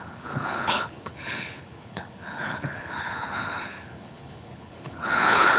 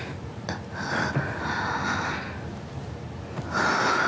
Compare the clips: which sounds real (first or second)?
second